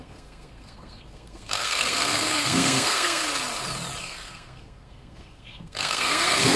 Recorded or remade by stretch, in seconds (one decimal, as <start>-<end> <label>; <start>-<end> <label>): 0.0-3.2 remade; 3.2-4.0 recorded; 4.0-6.6 remade